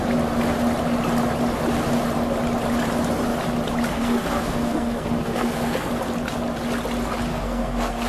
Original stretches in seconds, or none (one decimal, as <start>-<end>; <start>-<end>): 0.0-3.9; 5.9-7.3